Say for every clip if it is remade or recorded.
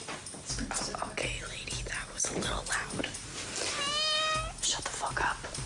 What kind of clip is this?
recorded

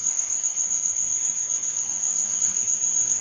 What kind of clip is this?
remade